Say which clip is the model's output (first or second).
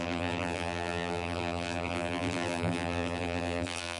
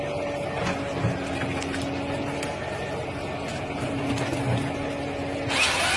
first